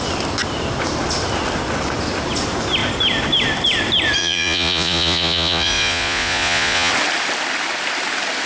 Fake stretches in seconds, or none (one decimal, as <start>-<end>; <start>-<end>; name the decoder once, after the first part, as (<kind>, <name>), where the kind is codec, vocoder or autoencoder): 4.2-6.9 (vocoder, Vocos)